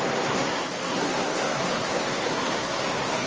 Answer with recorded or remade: remade